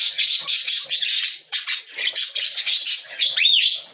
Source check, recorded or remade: remade